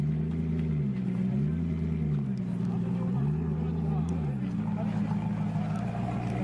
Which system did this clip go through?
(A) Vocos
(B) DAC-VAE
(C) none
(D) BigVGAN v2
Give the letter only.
C